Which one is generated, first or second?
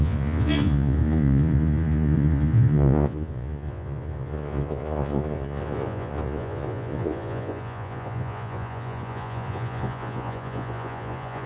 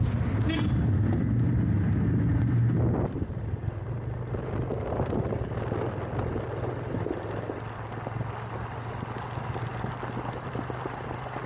first